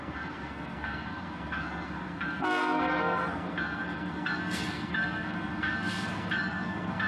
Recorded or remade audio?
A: remade